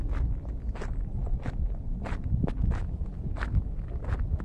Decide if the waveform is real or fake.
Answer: real